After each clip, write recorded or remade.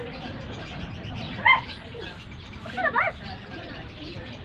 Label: recorded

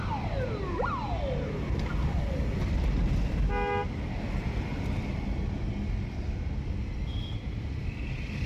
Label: recorded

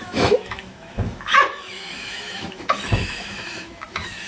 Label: remade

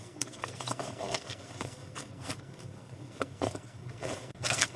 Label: remade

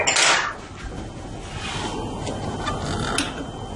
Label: recorded